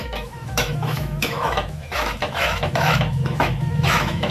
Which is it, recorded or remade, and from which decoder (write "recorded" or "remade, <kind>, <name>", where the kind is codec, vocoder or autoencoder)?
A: remade, autoencoder, DAC-VAE